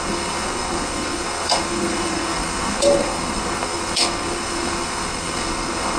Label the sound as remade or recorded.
remade